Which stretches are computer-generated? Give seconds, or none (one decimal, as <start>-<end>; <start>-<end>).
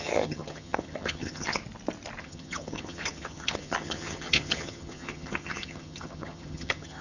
0.0-1.6; 2.2-7.0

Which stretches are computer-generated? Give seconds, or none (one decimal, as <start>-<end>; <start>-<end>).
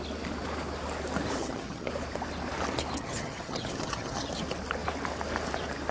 1.4-1.9; 3.0-4.3